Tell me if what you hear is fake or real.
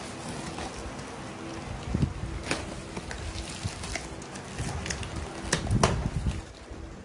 real